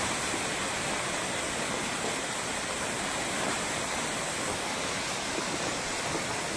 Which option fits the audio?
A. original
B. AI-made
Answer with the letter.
A